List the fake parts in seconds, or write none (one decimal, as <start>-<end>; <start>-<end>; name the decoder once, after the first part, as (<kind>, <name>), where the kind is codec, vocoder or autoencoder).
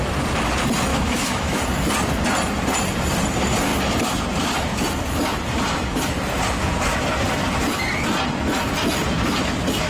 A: 0.9-1.6 (autoencoder, DAC-VAE)